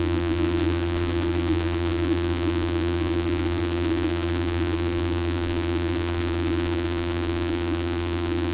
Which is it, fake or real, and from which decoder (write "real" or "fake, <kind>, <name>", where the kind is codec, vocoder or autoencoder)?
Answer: fake, vocoder, BigVGAN v2